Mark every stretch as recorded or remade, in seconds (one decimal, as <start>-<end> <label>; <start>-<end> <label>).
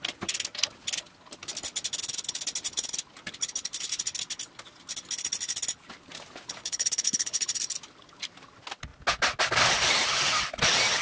0.0-6.6 recorded; 6.6-7.6 remade; 7.6-11.0 recorded